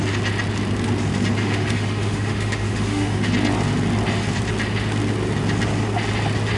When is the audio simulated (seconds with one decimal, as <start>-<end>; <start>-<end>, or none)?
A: 1.4-3.3